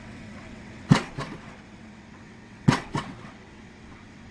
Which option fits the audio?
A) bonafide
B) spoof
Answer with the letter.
B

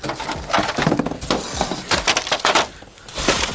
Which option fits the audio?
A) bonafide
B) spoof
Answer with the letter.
A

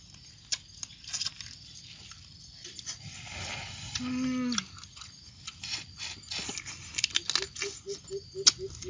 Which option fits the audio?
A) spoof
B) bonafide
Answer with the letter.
B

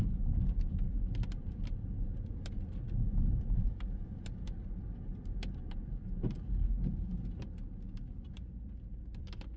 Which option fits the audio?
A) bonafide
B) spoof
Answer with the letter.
A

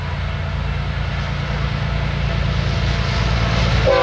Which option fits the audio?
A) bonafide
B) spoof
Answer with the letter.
A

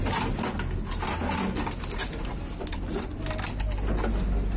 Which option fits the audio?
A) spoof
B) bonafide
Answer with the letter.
B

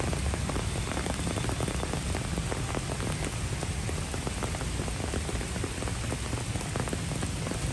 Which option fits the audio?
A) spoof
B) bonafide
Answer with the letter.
B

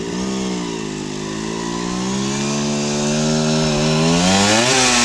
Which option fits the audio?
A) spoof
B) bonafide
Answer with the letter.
B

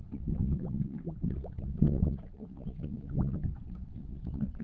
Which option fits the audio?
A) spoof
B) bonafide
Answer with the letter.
A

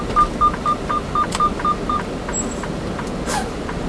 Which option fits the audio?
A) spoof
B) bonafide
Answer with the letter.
B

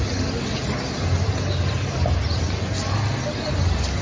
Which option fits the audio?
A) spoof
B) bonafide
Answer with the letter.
B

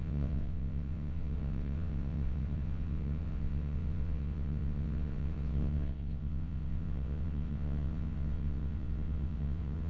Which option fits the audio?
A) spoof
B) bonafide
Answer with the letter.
A